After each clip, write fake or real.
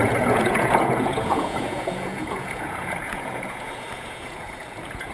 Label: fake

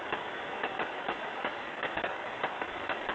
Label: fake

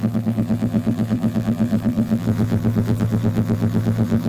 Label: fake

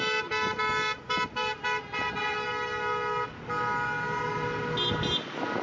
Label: real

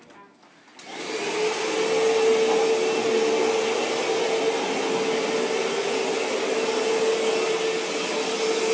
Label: real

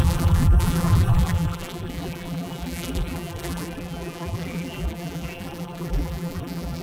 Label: fake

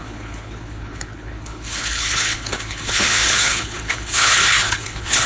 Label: fake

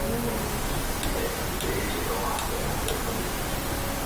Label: real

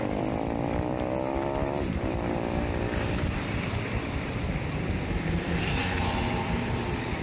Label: fake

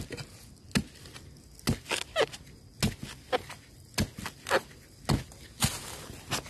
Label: real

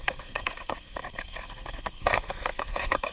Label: fake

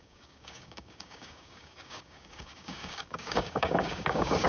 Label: fake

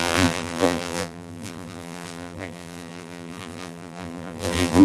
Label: fake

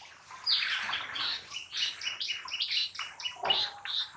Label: fake